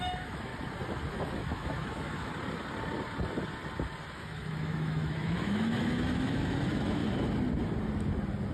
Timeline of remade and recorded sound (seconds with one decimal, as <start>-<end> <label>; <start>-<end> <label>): 0.0-0.5 remade; 0.5-1.1 recorded; 1.1-2.3 remade; 2.3-4.1 recorded; 4.1-7.0 remade; 7.0-8.5 recorded